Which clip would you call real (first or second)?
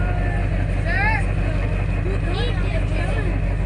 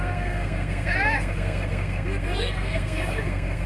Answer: first